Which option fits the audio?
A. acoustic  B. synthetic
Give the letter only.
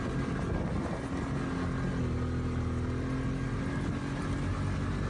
A